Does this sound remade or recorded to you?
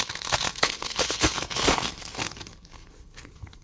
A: remade